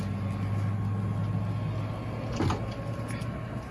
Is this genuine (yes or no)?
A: yes